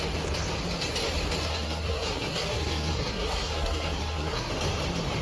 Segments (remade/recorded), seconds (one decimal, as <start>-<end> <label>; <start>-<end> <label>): 0.0-1.4 recorded; 1.4-4.5 remade; 4.5-5.2 recorded